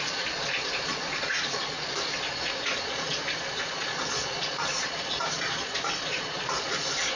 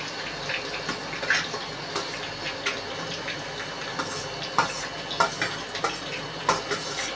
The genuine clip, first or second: second